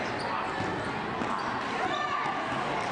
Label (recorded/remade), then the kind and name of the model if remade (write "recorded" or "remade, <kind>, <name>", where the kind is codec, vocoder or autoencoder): recorded